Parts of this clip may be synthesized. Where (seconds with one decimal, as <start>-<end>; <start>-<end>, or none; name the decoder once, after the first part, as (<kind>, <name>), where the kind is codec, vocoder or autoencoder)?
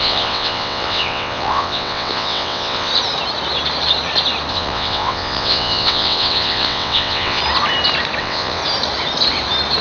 0.0-2.9 (vocoder, WaveNeXt); 4.5-7.4; 8.2-8.6